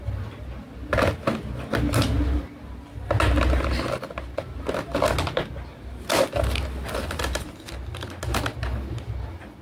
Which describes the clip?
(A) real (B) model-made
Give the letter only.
A